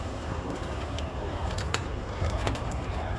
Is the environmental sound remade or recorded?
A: remade